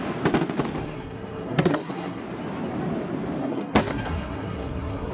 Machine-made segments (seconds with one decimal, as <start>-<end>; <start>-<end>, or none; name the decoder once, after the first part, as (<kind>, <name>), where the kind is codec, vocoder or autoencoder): 0.8-2.2 (codec, SNAC); 3.4-5.1